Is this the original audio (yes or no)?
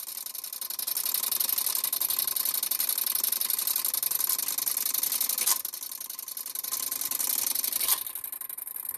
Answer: yes